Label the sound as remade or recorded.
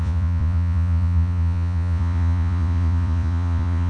remade